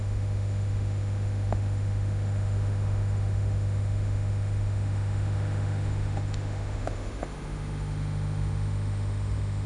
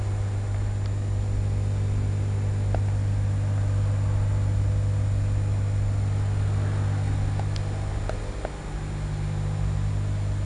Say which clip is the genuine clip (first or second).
second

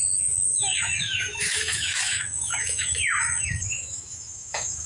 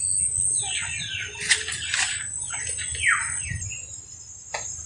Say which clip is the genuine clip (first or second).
second